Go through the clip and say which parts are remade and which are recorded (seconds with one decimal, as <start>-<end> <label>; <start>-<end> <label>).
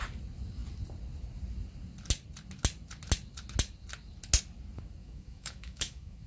0.0-5.0 recorded; 5.0-6.3 remade